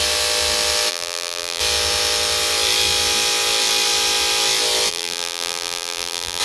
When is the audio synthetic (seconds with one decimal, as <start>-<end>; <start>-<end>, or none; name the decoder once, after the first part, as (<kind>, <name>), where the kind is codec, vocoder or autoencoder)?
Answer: 0.9-1.6 (vocoder, BigVGAN v2); 4.9-6.4